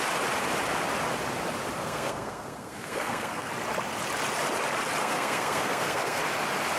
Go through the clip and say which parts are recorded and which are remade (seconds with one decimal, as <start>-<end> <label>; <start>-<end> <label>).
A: 0.0-1.8 recorded; 1.8-3.5 remade; 3.5-5.0 recorded; 5.0-6.2 remade; 6.2-6.8 recorded